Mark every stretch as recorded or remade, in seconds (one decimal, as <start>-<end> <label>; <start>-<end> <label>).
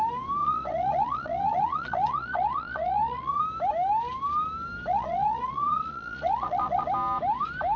0.0-0.4 recorded; 0.4-3.4 remade; 3.4-4.9 recorded; 4.9-6.9 remade; 6.9-7.8 recorded